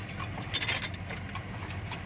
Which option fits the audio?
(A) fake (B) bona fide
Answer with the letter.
B